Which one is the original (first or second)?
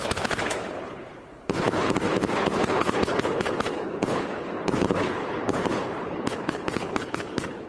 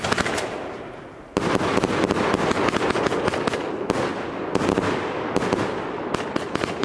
second